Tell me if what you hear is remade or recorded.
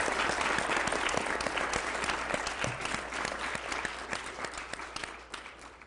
remade